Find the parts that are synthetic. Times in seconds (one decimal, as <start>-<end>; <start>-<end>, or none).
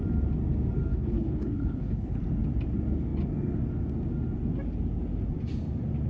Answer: 0.9-2.2